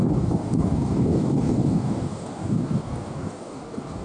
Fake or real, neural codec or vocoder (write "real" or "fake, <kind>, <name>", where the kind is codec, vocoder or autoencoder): fake, codec, DAC